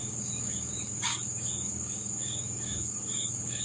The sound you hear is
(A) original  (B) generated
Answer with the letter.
B